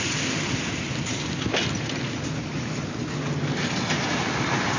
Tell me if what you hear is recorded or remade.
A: recorded